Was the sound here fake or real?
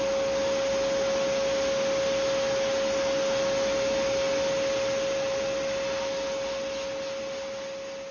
real